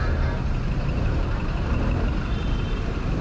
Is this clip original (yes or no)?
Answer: no